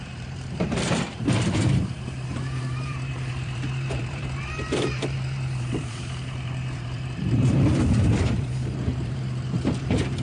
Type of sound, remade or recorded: remade